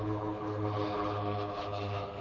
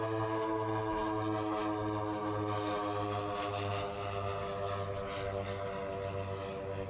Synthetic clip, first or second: first